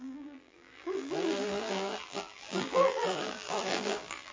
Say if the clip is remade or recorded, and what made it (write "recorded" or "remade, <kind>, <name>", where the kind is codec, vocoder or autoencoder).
remade, vocoder, BigVGAN v2